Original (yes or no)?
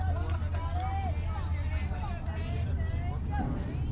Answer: yes